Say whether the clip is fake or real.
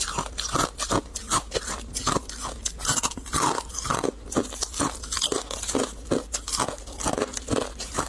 real